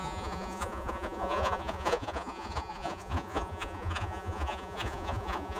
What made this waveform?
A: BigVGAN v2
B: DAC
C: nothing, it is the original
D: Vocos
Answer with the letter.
D